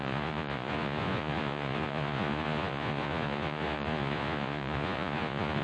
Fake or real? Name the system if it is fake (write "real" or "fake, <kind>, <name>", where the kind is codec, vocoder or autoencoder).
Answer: fake, vocoder, Vocos